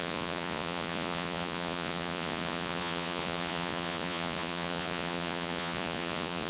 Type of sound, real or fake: fake